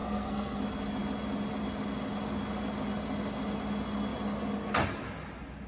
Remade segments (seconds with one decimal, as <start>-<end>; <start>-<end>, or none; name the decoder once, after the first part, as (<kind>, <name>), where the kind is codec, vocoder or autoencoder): 0.0-0.6 (codec, SNAC)